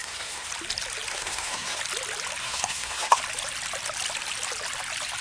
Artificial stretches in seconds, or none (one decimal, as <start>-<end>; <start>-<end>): 0.0-0.5; 1.1-1.8; 2.4-3.2